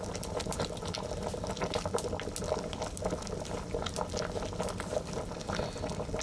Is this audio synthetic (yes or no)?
no